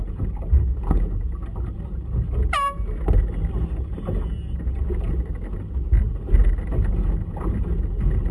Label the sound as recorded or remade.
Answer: recorded